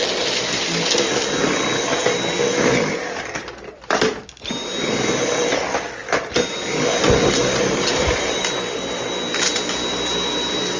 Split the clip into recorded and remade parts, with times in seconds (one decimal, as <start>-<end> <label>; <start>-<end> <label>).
0.0-7.4 recorded; 7.4-8.4 remade; 8.4-10.8 recorded